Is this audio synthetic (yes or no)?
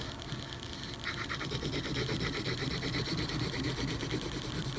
no